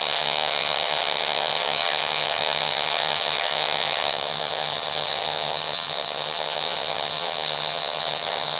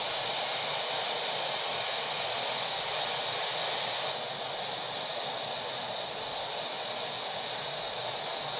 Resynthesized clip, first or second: first